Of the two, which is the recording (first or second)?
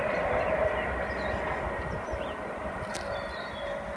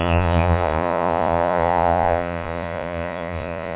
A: first